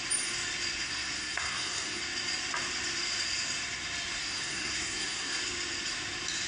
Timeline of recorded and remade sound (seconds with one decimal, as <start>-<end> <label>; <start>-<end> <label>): 0.0-0.8 recorded; 0.8-2.0 remade; 2.0-4.2 recorded; 4.2-5.4 remade; 5.4-6.5 recorded